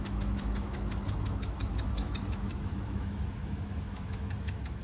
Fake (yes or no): yes